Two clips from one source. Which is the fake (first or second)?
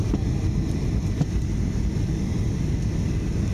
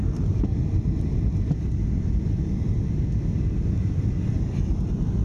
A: second